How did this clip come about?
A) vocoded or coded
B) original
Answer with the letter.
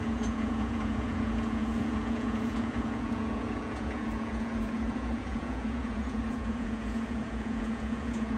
A